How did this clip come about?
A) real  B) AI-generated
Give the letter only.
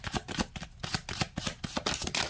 A